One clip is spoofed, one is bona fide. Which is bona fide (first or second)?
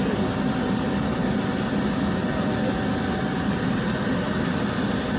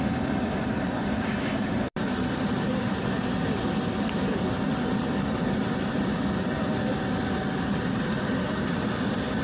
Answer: first